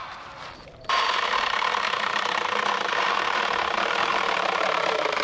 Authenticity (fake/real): fake